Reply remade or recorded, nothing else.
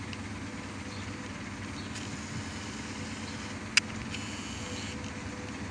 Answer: recorded